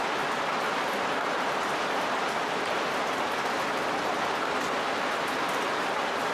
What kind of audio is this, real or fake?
real